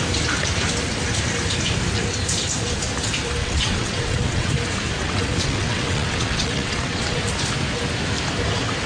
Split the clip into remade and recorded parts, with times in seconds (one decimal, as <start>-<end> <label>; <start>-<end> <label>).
0.0-3.4 recorded; 3.4-4.5 remade; 4.5-5.0 recorded; 5.0-7.2 remade; 7.2-8.9 recorded